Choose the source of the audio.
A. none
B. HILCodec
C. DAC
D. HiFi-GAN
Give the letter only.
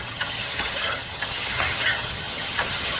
D